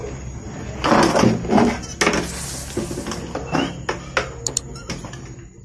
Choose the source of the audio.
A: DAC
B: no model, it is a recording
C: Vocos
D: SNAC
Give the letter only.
B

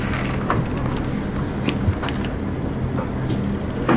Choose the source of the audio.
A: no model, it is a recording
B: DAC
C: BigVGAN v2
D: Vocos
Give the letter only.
A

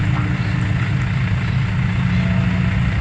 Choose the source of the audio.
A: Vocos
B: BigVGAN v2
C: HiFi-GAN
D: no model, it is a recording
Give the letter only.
D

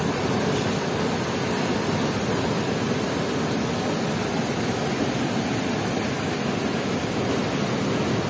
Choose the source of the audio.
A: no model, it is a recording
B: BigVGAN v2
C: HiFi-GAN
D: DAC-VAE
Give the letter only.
A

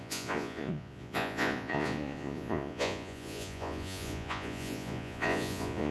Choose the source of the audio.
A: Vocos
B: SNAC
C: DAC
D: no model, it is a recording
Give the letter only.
A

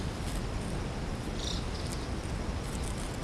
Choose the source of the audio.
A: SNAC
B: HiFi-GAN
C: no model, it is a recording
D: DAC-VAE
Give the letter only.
C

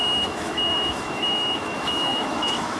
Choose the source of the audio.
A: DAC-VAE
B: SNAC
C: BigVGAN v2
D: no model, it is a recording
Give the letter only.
A